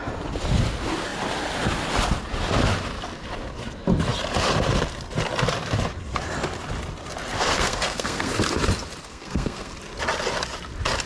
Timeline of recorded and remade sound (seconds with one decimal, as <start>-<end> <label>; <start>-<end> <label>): 0.0-7.4 recorded; 7.4-8.3 remade; 8.3-9.0 recorded; 9.0-9.7 remade; 9.7-11.1 recorded